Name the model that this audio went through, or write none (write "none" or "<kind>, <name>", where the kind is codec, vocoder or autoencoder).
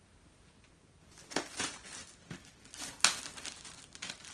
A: none